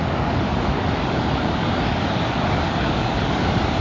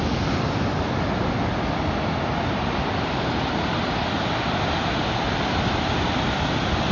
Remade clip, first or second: first